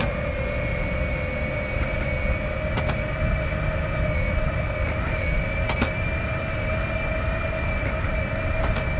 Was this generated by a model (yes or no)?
no